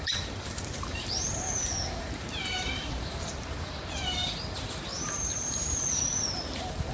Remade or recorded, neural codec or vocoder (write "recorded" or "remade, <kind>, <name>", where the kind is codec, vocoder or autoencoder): remade, vocoder, BigVGAN v2